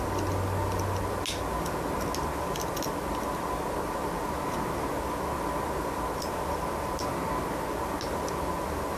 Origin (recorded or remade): recorded